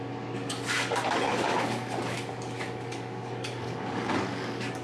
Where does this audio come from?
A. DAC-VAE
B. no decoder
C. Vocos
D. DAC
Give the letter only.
D